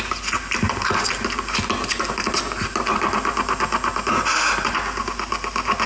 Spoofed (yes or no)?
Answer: no